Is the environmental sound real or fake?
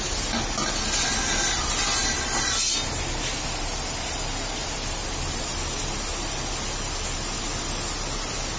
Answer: real